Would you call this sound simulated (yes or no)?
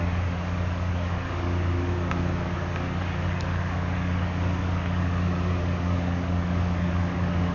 yes